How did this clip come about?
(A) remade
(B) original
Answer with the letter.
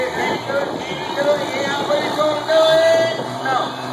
B